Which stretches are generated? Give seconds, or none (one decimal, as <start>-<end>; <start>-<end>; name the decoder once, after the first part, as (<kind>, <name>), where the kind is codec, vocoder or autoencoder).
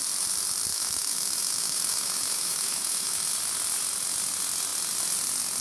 0.7-3.3 (autoencoder, DAC-VAE)